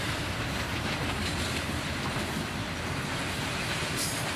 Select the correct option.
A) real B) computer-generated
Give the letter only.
B